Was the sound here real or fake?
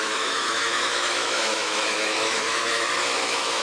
fake